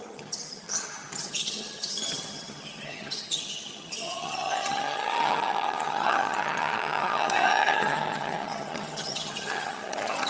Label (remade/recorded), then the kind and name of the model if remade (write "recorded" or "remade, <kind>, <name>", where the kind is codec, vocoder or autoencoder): remade, vocoder, HiFi-GAN